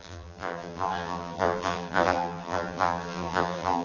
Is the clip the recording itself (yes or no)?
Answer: no